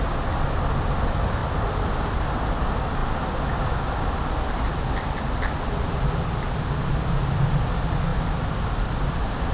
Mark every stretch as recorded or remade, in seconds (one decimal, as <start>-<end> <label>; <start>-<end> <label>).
0.0-1.4 recorded; 1.4-2.2 remade; 2.2-9.5 recorded